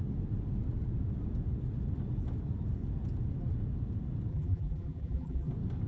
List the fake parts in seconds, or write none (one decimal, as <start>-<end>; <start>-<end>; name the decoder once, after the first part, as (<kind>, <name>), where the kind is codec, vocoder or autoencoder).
4.3-5.5 (vocoder, BigVGAN v2)